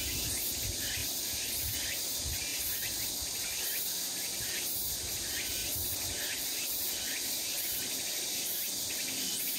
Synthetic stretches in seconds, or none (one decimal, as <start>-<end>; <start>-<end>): none